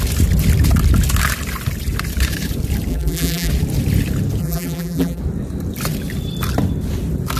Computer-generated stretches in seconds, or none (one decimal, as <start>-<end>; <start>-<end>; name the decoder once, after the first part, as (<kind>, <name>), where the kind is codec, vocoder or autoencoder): 2.9-3.5 (vocoder, BigVGAN v2); 4.4-5.2

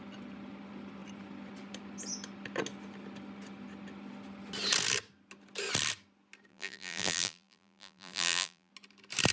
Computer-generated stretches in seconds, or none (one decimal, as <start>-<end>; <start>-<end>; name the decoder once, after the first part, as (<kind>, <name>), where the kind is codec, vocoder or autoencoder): 6.5-8.7 (vocoder, BigVGAN v2)

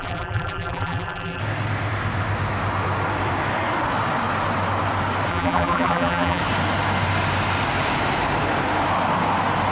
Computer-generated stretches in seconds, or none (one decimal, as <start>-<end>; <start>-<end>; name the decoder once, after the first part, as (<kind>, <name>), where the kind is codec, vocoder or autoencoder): 0.0-1.4 (vocoder, BigVGAN v2); 5.3-6.4

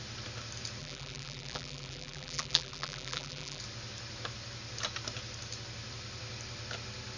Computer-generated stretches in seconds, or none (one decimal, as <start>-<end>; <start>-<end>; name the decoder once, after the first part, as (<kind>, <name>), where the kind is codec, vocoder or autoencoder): 0.8-3.6 (vocoder, BigVGAN v2)

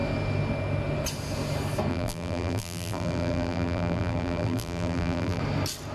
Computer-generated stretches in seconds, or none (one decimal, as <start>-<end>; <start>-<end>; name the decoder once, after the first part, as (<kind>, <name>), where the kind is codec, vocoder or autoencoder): 1.9-5.4 (vocoder, BigVGAN v2)

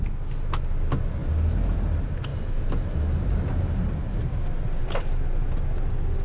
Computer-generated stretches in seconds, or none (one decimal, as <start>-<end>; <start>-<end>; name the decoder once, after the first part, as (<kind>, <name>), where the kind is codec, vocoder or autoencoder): 2.3-3.9 (vocoder, BigVGAN v2); 4.8-5.4

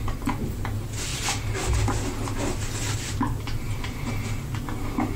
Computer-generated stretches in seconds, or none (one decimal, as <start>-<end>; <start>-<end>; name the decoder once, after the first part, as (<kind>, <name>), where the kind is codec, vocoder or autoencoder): none